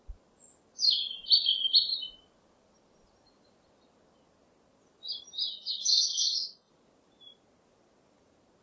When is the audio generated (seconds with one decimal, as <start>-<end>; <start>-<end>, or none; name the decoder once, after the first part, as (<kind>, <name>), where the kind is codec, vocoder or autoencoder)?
5.5-6.7 (codec, SNAC)